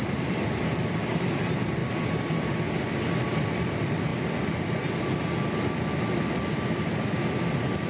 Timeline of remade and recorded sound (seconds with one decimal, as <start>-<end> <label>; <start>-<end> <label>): 0.0-1.8 remade; 1.8-2.4 recorded; 2.4-4.1 remade; 4.1-7.9 recorded